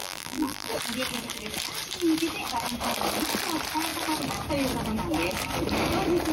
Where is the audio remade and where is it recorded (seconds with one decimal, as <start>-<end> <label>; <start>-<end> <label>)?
0.0-0.7 remade; 0.7-6.3 recorded

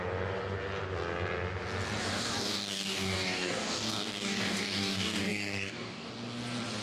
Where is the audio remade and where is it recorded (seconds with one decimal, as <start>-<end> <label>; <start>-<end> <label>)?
0.0-2.0 recorded; 2.0-6.1 remade; 6.1-6.8 recorded

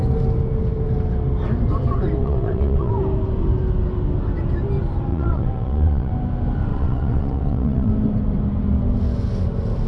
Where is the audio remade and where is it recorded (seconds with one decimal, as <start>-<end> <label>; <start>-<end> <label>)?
0.0-2.2 recorded; 2.2-2.9 remade; 2.9-5.1 recorded; 5.1-6.1 remade; 6.1-6.7 recorded; 6.7-7.9 remade; 7.9-9.9 recorded

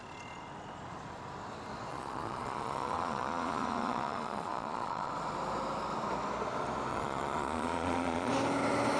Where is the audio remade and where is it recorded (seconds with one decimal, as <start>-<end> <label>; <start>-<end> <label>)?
0.0-1.9 recorded; 1.9-5.1 remade; 5.1-6.9 recorded; 6.9-8.3 remade; 8.3-9.0 recorded

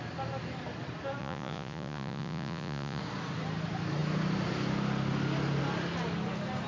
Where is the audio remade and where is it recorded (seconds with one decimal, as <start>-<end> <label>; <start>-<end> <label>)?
0.0-1.2 recorded; 1.2-3.0 remade; 3.0-6.7 recorded

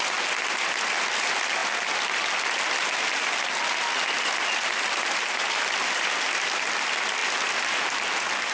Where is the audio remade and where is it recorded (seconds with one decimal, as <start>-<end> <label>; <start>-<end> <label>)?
0.0-8.5 recorded

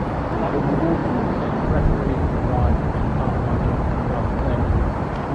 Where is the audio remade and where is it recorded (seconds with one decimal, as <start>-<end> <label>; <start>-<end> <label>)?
0.0-5.3 recorded

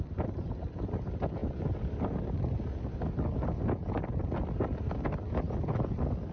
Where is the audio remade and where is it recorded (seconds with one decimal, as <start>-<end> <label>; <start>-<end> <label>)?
0.0-6.3 recorded